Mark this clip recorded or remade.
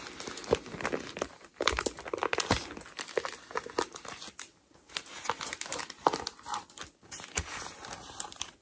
recorded